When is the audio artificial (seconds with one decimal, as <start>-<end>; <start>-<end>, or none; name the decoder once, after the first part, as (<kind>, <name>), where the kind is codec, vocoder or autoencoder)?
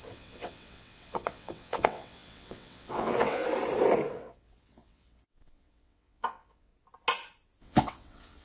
0.0-3.4 (vocoder, WaveNeXt); 4.1-6.7; 7.6-8.4